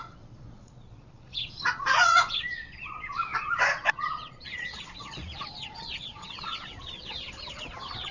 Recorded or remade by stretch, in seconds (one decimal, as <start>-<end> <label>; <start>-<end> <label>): 0.0-8.1 remade